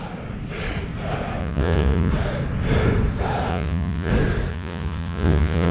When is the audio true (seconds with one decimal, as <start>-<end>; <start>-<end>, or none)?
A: 0.0-1.4; 2.1-3.5; 4.1-4.5